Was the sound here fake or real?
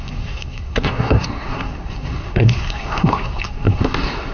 fake